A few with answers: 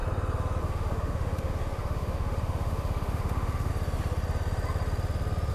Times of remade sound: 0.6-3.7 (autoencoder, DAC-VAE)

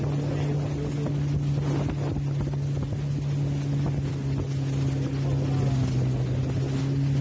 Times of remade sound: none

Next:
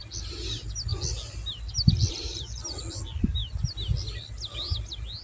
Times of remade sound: none

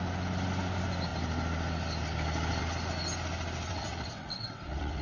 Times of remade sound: 3.7-5.0 (vocoder, WaveNeXt)